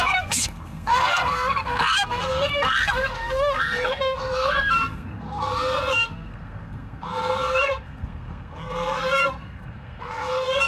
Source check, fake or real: fake